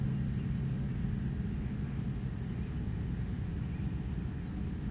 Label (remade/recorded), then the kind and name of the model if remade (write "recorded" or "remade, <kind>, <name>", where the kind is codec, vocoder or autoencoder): recorded